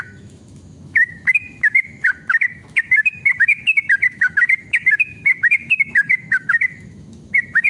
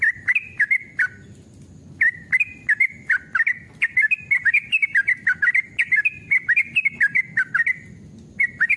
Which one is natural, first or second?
second